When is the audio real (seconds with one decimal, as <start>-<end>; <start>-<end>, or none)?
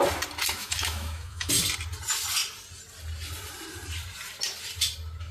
0.0-0.6; 1.5-5.3